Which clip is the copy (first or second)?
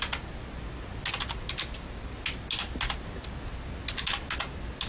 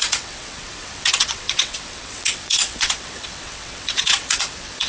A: second